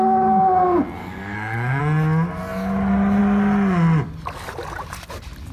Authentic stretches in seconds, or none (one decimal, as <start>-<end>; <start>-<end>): 0.0-1.0; 1.8-5.5